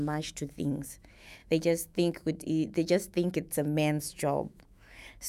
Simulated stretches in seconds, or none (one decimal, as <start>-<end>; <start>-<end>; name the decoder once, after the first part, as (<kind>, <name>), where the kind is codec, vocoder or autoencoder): 0.0-5.3 (autoencoder, DAC-VAE)